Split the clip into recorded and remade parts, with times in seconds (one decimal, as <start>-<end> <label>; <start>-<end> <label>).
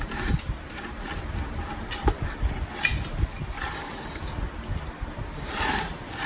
0.0-6.3 remade